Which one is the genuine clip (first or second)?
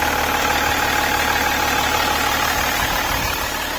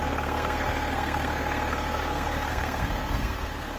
first